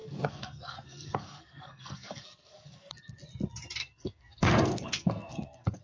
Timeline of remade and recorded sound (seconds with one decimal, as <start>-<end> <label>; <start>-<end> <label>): 0.0-2.9 remade; 2.9-3.8 recorded; 3.8-5.8 remade